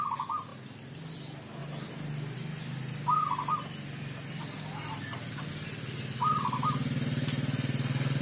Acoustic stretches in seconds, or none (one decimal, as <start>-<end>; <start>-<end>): 0.0-8.2